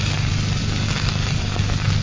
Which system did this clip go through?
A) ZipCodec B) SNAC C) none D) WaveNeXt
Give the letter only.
C